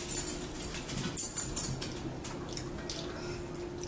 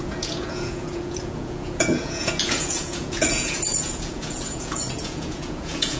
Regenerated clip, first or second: second